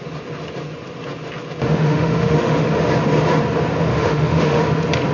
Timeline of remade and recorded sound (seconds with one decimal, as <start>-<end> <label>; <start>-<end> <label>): 0.0-1.7 recorded; 1.7-2.7 remade; 2.7-3.9 recorded; 3.9-4.6 remade; 4.6-5.1 recorded